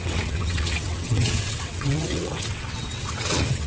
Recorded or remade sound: remade